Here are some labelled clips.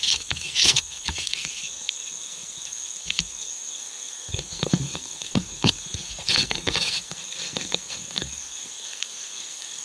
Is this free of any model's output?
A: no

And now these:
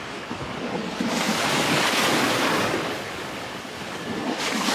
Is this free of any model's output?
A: no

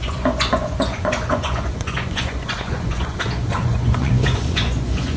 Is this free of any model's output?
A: no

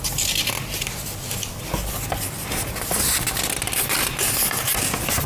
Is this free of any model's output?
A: yes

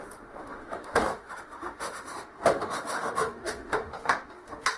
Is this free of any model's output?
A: no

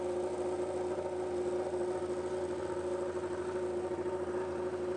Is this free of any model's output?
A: yes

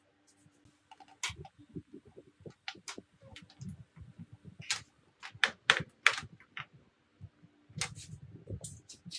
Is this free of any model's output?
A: yes